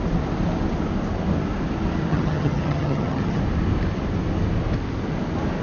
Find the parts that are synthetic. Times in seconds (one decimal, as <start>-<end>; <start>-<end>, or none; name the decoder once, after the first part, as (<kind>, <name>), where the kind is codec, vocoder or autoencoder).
2.1-3.4 (vocoder, HiFi-GAN)